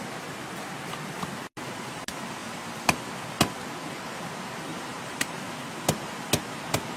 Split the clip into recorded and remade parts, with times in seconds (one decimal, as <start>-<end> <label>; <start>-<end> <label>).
0.0-2.4 recorded; 2.4-3.0 remade; 3.0-4.7 recorded; 4.7-5.4 remade; 5.4-7.0 recorded